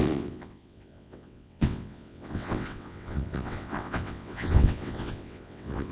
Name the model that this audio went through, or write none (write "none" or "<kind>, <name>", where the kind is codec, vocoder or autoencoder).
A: vocoder, WaveNeXt